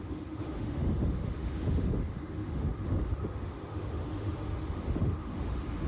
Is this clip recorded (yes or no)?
no